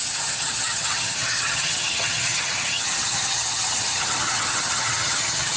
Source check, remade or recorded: remade